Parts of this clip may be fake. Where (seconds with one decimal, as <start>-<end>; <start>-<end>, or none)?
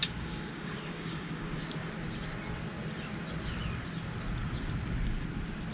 0.0-1.6